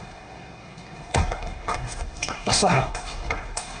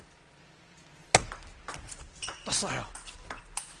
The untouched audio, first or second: second